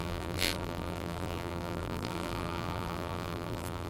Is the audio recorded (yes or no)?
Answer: no